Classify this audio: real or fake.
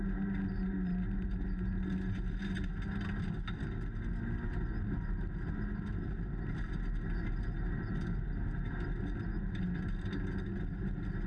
real